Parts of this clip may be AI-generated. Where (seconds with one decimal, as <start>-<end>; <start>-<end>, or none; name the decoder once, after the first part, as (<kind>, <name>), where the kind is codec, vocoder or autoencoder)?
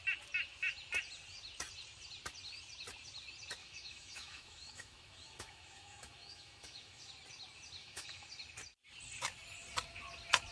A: 3.6-7.1 (autoencoder, DAC-VAE); 7.8-8.3